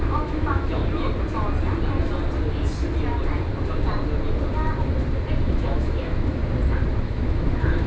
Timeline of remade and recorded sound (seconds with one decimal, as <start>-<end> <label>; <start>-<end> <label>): 0.0-0.8 remade; 0.8-5.5 recorded; 5.5-6.4 remade; 6.4-7.0 recorded; 7.0-7.9 remade